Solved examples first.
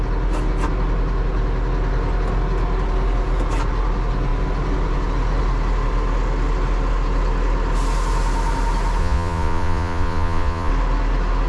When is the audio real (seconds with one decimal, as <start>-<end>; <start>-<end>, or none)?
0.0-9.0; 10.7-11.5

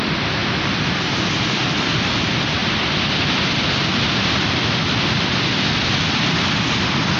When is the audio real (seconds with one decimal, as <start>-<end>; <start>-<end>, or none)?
0.0-2.6; 4.6-7.2

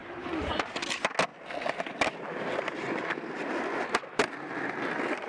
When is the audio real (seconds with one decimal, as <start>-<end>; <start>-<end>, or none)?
0.5-1.3; 4.5-5.3